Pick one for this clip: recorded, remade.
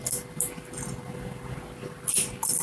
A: recorded